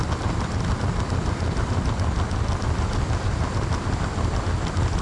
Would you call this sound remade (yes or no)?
no